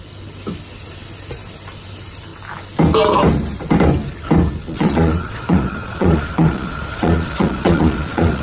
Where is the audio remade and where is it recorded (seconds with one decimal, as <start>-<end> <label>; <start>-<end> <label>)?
0.0-4.6 recorded; 4.6-8.4 remade